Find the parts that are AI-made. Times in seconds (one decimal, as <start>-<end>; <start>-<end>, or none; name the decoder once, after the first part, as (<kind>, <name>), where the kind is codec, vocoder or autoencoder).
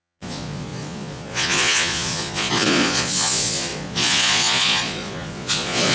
0.0-5.9 (vocoder, Vocos)